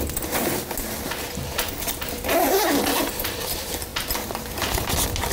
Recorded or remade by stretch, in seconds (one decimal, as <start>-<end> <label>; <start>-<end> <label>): 0.0-5.3 recorded